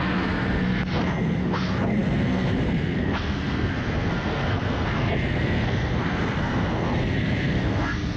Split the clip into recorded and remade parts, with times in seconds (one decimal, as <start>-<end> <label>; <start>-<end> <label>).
0.0-8.2 remade